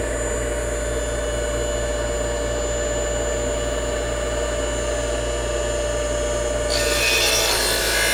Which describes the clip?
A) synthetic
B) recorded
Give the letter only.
B